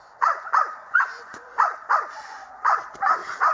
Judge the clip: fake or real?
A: fake